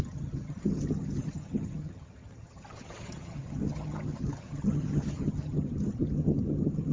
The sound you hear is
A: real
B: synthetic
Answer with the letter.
B